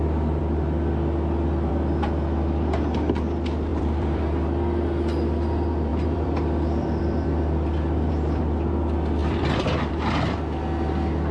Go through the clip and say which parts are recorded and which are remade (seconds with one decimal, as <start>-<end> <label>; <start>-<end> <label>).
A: 0.0-3.7 recorded; 3.7-4.2 remade; 4.2-5.9 recorded; 5.9-8.1 remade; 8.1-9.2 recorded; 9.2-9.9 remade; 9.9-11.3 recorded